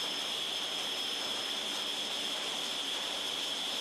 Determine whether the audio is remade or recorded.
remade